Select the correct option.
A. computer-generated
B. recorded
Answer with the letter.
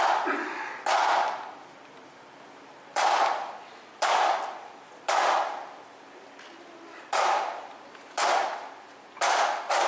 B